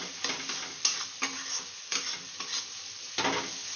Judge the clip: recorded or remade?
recorded